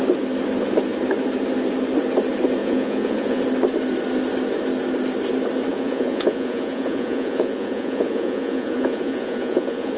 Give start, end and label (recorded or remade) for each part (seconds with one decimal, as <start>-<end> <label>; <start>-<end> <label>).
0.0-2.6 recorded; 2.6-3.4 remade; 3.4-5.7 recorded; 5.7-10.0 remade